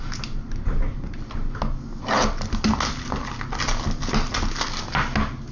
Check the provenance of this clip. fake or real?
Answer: real